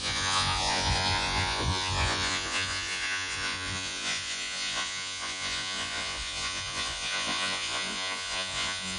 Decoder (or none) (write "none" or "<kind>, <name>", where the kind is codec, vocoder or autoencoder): vocoder, Vocos